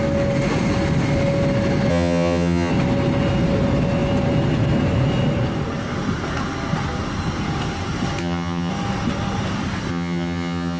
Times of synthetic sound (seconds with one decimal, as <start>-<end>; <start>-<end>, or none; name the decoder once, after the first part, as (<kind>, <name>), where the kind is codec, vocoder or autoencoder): 1.9-2.7 (vocoder, HiFi-GAN); 8.2-8.7; 9.9-10.8